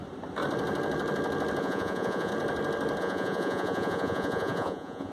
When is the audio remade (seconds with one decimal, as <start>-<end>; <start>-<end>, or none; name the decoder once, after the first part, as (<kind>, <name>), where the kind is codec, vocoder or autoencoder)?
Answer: 1.6-2.3 (vocoder, Vocos); 3.0-5.1

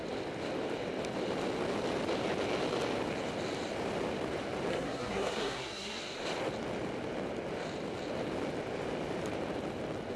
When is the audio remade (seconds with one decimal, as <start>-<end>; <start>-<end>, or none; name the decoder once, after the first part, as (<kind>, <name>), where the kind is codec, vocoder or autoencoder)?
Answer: 4.7-6.0 (codec, SNAC)

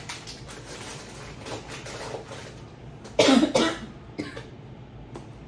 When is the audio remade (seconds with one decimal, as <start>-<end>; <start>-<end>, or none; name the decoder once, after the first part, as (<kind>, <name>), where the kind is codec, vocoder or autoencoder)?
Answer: none

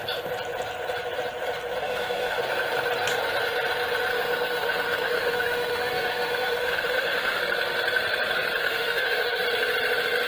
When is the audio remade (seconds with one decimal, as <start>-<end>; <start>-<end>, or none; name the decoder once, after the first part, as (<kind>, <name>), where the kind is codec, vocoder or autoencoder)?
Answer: 1.8-2.4 (autoencoder, DAC-VAE); 4.1-7.4; 8.6-9.4